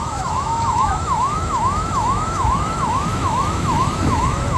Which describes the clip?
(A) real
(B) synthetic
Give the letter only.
B